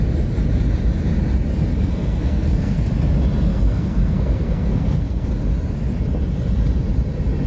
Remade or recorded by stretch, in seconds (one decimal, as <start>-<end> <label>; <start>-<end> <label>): 0.0-1.8 recorded; 1.8-2.9 remade; 2.9-3.5 recorded; 3.5-5.3 remade; 5.3-7.5 recorded